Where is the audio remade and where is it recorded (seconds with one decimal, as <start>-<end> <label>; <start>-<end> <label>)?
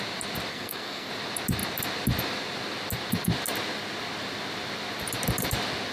0.0-0.5 recorded; 0.5-1.1 remade; 1.1-5.9 recorded